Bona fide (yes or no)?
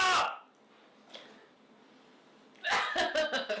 yes